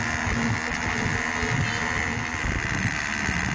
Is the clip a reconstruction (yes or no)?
no